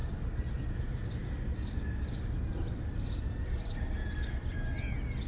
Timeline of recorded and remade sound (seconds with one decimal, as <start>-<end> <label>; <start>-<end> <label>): 0.0-5.3 recorded